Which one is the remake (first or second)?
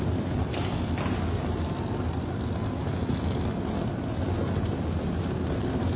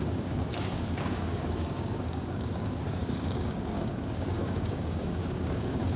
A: second